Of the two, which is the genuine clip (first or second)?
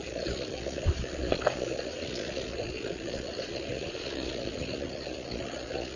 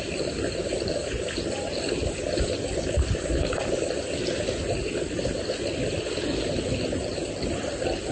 second